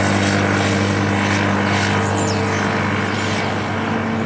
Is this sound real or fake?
real